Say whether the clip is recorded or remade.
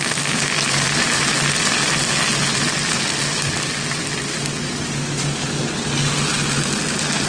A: recorded